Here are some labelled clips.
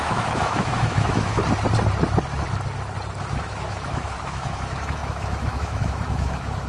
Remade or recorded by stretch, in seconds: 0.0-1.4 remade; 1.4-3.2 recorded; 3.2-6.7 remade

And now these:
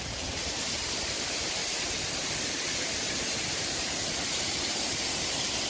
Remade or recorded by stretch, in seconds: 0.0-1.6 remade; 1.6-3.0 recorded; 3.0-5.7 remade